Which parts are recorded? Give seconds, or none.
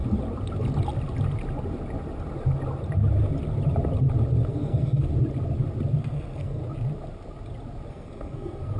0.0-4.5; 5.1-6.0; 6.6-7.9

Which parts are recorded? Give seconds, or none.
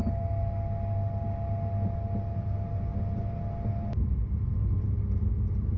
0.0-5.8